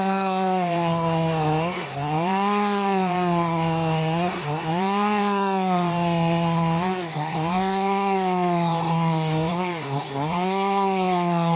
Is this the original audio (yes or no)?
no